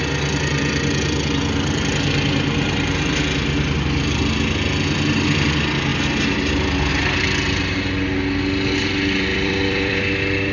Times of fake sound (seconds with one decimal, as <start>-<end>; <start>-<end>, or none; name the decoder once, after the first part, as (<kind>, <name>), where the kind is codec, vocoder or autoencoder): 9.3-10.0 (vocoder, BigVGAN v2)